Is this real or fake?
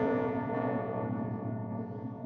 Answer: fake